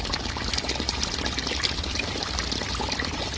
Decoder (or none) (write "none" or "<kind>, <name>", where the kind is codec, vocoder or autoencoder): none